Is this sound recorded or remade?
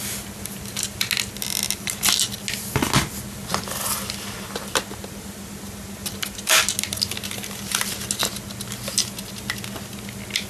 recorded